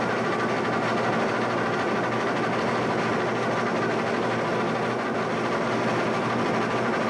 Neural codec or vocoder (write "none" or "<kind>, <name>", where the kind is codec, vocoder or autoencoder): none